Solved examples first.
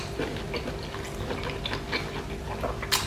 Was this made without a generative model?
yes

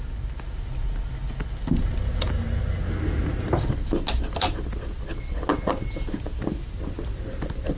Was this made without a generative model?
yes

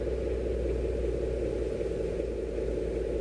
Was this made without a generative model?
yes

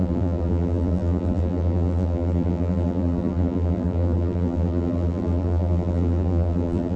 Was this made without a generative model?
no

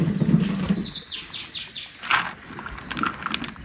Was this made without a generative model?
yes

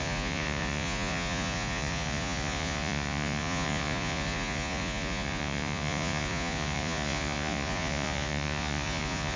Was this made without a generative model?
no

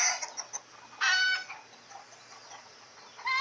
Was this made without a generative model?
yes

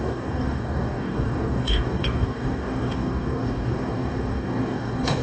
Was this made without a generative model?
no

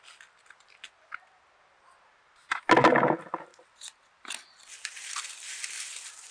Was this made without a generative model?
yes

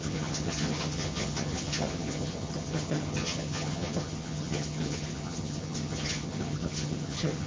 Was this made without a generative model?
no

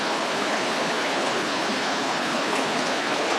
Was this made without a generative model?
no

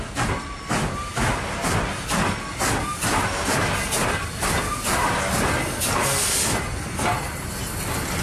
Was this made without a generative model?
yes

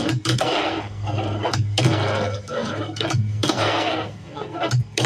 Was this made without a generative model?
no